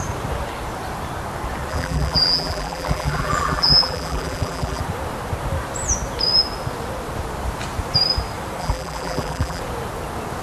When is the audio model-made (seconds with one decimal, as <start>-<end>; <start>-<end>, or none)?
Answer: 1.7-4.8; 8.6-9.6